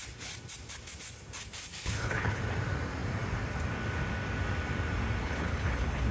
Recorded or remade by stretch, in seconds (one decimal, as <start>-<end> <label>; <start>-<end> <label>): 0.0-1.7 recorded; 1.7-2.4 remade; 2.4-5.2 recorded; 5.2-6.1 remade